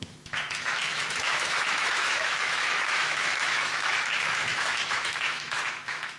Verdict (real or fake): fake